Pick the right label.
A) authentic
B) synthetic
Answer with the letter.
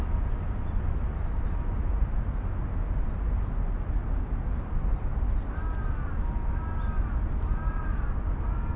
A